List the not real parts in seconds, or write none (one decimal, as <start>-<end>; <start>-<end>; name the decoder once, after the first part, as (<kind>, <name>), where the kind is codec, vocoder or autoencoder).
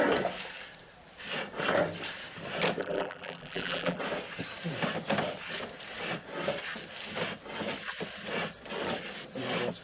2.8-4.0 (vocoder, BigVGAN v2)